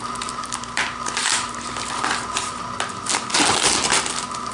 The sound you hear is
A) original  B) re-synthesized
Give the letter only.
A